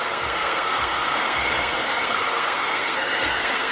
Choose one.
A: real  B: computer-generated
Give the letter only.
B